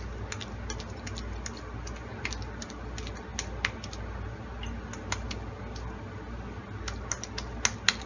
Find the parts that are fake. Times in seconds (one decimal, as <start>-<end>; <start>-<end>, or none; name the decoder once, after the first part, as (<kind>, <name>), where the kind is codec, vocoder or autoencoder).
none